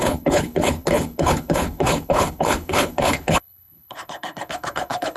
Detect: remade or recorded remade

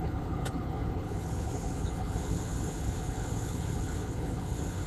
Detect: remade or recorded remade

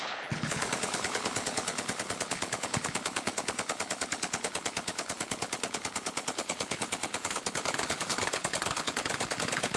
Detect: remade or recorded remade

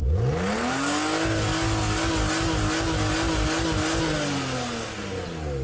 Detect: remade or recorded recorded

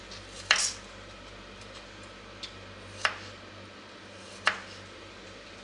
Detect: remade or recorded recorded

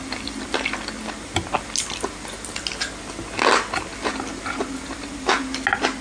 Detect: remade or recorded recorded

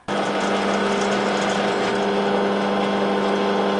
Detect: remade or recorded recorded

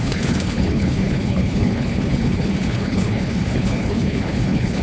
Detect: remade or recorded remade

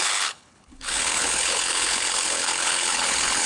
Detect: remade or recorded remade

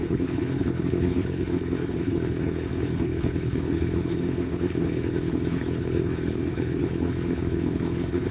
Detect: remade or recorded remade